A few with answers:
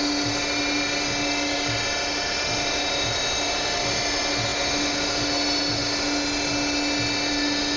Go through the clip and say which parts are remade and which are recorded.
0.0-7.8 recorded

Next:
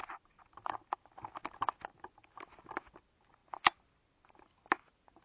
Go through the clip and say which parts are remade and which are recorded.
0.0-5.2 recorded

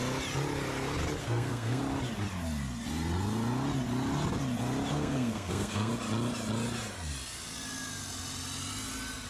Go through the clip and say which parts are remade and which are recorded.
0.0-1.2 recorded; 1.2-1.8 remade; 1.8-4.9 recorded; 4.9-5.9 remade; 5.9-9.3 recorded

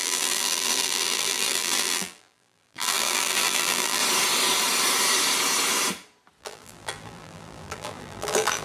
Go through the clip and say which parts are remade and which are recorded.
0.0-4.0 remade; 4.0-6.4 recorded; 6.4-8.6 remade

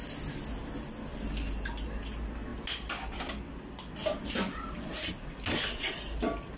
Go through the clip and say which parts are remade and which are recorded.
0.0-1.1 recorded; 1.1-1.7 remade; 1.7-4.0 recorded; 4.0-5.0 remade; 5.0-6.6 recorded